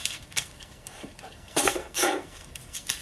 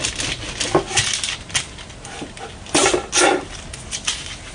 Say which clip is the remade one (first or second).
first